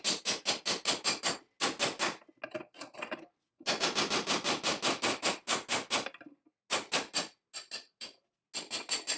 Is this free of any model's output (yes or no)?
yes